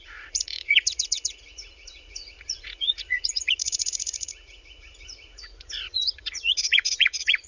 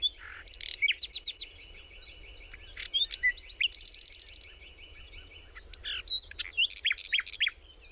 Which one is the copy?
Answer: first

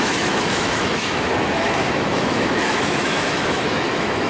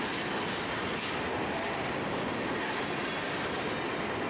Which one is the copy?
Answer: first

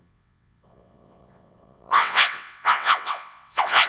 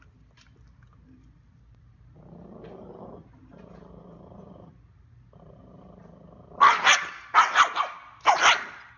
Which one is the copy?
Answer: first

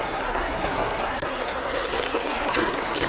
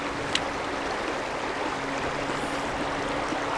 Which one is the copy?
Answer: first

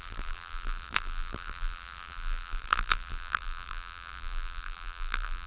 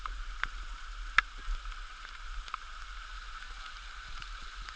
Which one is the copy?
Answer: first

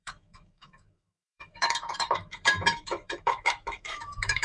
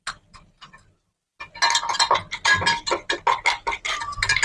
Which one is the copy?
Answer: first